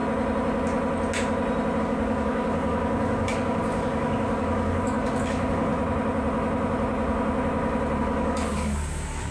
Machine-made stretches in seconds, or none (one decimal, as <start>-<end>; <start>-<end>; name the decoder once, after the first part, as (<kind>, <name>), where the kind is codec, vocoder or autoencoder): 1.8-5.7 (codec, DAC); 8.0-9.3